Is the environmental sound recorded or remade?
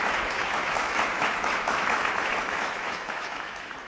remade